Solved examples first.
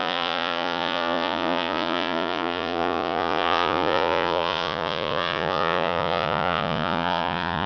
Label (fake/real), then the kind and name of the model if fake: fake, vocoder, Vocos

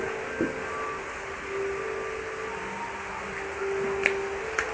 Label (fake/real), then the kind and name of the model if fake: real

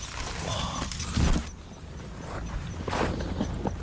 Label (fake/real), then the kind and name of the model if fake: real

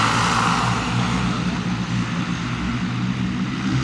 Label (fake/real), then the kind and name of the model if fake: real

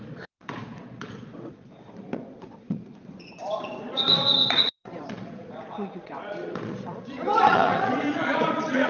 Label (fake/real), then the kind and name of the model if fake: fake, vocoder, Vocos